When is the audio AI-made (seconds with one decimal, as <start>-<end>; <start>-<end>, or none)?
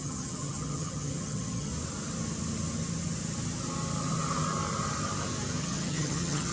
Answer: 0.0-1.7; 5.6-6.5